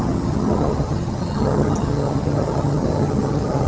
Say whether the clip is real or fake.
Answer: fake